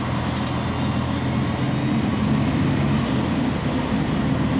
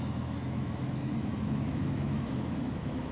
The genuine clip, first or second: first